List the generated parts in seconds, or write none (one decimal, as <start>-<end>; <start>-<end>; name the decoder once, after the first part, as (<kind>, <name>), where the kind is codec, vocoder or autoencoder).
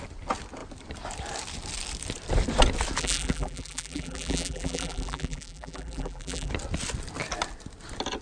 3.0-6.5 (vocoder, BigVGAN v2)